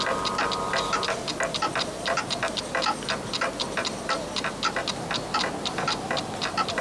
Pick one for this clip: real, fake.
real